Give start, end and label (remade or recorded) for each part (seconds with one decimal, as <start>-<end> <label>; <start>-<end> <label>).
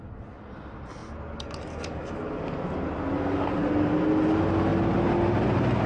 0.0-5.9 recorded